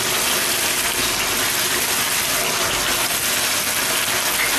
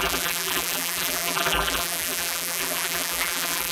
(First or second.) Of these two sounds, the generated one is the second